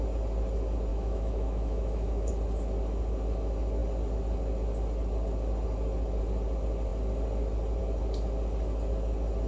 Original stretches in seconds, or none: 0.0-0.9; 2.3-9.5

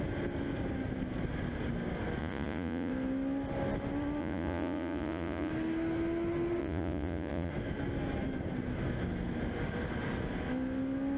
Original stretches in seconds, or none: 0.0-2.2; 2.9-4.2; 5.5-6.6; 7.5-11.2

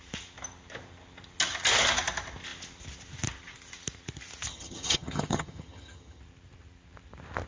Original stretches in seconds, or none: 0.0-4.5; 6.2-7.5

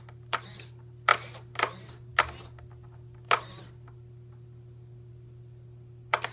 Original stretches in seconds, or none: 0.0-6.3